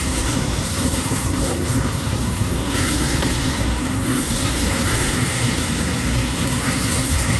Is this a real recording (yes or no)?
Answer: no